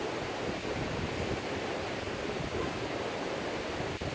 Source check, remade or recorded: recorded